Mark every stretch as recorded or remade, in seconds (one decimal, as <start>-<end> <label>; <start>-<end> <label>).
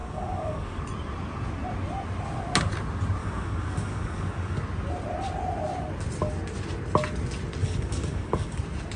0.0-0.8 remade; 0.8-3.2 recorded; 3.2-4.6 remade; 4.6-7.6 recorded; 7.6-8.6 remade; 8.6-9.0 recorded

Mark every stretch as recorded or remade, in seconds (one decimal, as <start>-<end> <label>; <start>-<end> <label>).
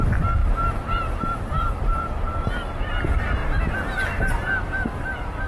0.0-0.4 recorded; 0.4-2.5 remade; 2.5-5.5 recorded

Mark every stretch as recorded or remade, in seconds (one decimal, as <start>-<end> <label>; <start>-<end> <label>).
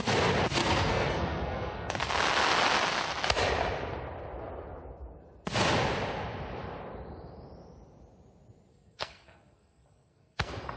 0.0-0.6 recorded; 0.6-2.1 remade; 2.1-8.7 recorded; 8.7-10.8 remade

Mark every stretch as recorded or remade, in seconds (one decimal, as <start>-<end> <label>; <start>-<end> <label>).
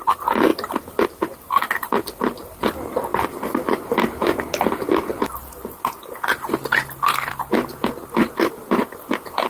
0.0-9.5 recorded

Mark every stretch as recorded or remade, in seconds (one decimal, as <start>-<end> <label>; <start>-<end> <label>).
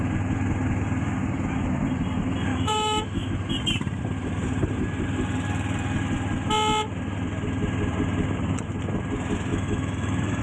0.0-2.5 recorded; 2.5-3.3 remade; 3.3-9.5 recorded; 9.5-10.4 remade